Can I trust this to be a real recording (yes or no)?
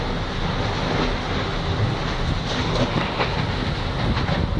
yes